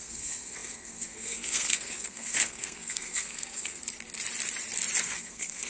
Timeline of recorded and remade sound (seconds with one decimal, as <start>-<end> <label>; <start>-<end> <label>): 0.0-3.8 remade; 3.8-5.0 recorded; 5.0-5.7 remade